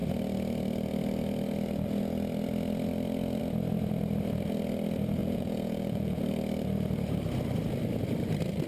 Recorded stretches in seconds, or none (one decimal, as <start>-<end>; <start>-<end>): 0.0-5.2; 6.2-8.7